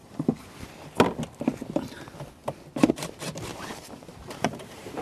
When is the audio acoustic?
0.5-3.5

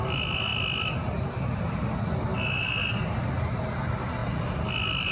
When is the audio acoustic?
none

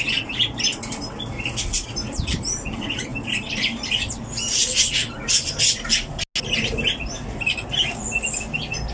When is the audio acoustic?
0.0-8.9

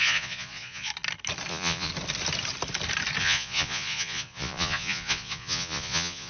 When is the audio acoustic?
0.9-1.5; 1.9-3.2